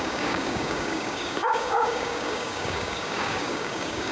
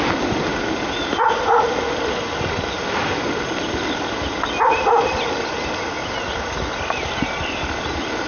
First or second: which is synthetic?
first